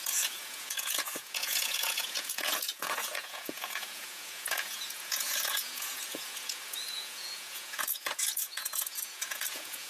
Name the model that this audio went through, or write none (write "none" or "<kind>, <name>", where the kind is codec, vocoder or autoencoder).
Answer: vocoder, Vocos